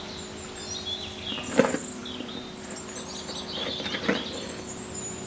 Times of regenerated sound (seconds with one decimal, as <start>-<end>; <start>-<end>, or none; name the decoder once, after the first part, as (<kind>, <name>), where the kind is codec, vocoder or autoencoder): none